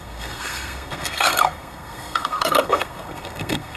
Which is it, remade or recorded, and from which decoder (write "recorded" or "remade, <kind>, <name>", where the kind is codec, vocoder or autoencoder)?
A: remade, codec, SNAC